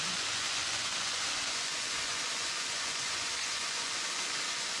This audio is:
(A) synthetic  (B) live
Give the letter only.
A